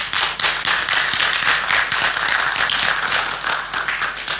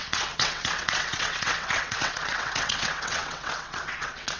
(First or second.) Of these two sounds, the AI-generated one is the second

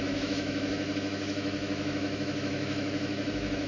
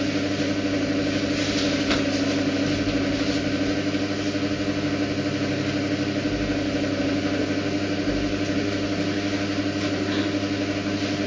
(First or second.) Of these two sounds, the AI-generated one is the first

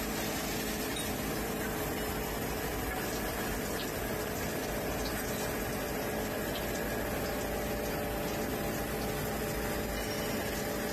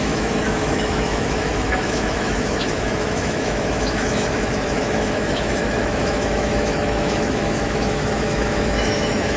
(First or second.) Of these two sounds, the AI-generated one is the second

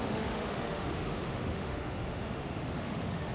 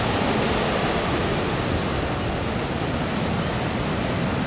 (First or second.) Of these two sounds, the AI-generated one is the first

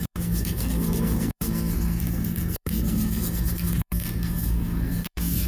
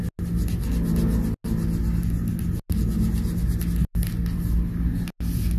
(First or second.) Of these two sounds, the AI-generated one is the first